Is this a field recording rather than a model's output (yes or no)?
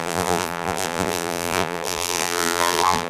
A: no